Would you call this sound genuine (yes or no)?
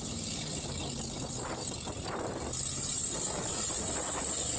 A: yes